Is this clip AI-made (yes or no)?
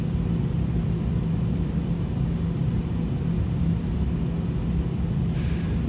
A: no